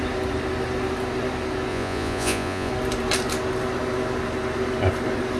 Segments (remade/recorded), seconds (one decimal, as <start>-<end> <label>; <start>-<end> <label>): 0.0-1.7 recorded; 1.7-2.7 remade; 2.7-5.4 recorded

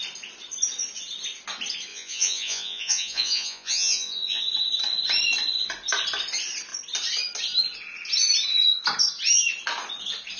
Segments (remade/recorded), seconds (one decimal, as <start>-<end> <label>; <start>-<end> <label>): 0.0-1.9 recorded; 1.9-4.4 remade; 4.4-10.4 recorded

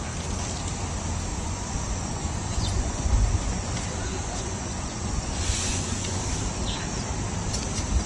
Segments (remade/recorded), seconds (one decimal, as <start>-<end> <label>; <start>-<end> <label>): 0.0-1.3 recorded; 1.3-6.2 remade; 6.2-8.1 recorded

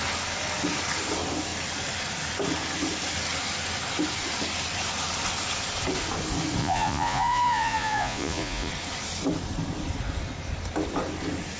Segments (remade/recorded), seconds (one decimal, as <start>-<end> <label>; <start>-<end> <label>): 0.0-6.6 recorded; 6.6-8.7 remade; 8.7-11.6 recorded

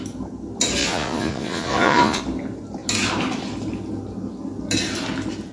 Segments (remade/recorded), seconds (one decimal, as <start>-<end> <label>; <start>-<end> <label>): 0.0-0.8 recorded; 0.8-2.2 remade; 2.2-5.5 recorded

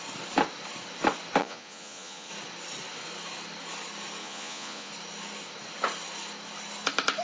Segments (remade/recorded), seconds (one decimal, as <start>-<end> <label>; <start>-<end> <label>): 0.0-1.4 recorded; 1.4-2.3 remade; 2.3-4.2 recorded; 4.2-4.9 remade; 4.9-7.2 recorded

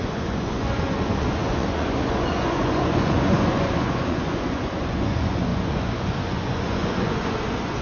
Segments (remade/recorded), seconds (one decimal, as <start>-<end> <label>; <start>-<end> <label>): 0.0-7.8 remade

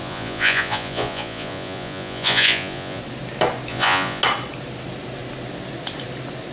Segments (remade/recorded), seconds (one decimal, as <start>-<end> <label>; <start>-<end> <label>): 0.0-3.0 remade; 3.0-3.7 recorded; 3.7-4.2 remade; 4.2-6.5 recorded